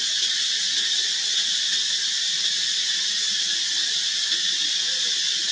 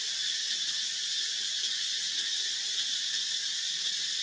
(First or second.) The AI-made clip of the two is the second